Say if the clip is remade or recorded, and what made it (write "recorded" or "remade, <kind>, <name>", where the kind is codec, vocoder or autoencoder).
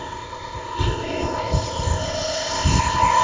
remade, codec, ZipCodec